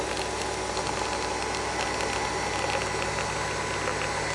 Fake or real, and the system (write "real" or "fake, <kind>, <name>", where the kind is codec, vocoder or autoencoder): real